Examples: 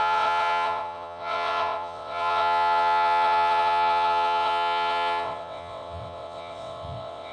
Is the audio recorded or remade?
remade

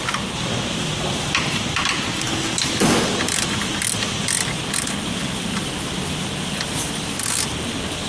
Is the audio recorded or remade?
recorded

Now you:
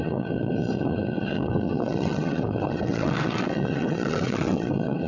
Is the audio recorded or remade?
remade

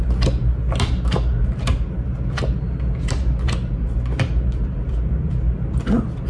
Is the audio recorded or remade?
recorded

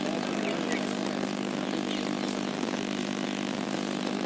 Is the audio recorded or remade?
recorded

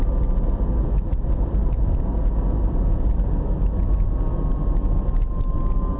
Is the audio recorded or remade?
recorded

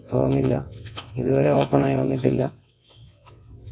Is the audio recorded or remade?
remade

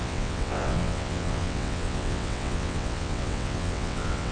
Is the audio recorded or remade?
remade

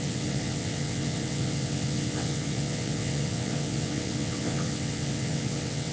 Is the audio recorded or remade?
remade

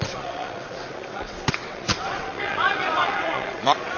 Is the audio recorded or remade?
remade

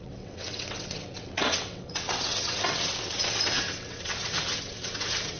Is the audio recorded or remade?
remade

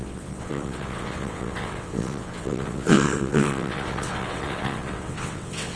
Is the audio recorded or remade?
remade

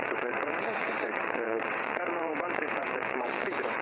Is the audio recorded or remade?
remade